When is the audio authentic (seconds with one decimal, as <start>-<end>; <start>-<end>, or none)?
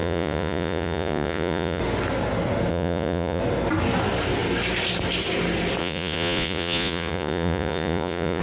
1.8-2.7; 3.4-5.8